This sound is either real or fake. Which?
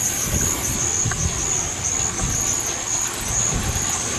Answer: real